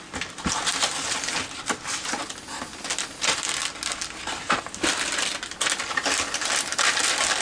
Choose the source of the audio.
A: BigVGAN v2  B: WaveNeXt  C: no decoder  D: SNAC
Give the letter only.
C